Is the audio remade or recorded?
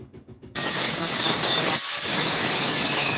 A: remade